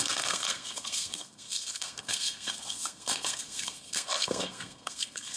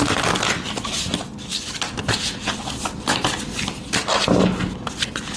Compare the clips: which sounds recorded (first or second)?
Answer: second